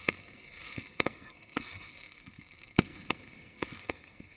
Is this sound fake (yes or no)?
yes